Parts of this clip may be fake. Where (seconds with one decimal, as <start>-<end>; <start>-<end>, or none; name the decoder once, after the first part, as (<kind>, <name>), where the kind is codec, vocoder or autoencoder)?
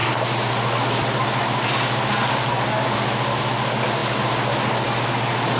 none